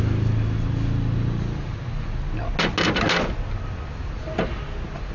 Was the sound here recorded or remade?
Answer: recorded